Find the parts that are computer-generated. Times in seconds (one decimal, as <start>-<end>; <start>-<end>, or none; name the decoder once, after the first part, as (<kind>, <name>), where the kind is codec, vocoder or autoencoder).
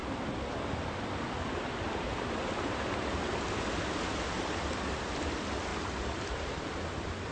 none